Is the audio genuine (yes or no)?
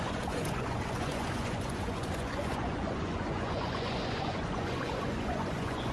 no